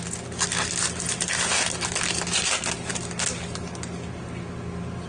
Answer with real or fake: real